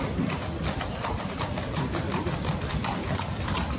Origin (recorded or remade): remade